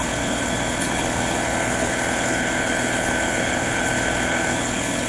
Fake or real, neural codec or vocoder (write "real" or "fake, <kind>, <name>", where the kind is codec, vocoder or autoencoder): fake, codec, HILCodec